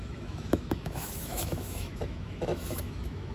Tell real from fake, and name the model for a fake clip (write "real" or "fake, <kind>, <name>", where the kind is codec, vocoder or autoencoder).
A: fake, autoencoder, DAC-VAE